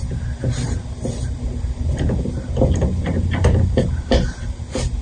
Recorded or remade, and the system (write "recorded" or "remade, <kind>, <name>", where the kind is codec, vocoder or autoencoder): remade, vocoder, BigVGAN v2